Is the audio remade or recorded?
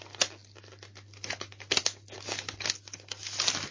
recorded